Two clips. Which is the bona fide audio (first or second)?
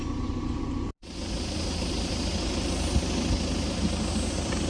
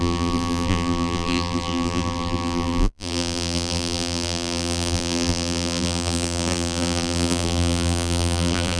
first